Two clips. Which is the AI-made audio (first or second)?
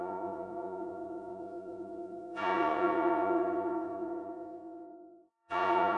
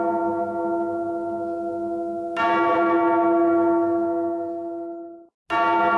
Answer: first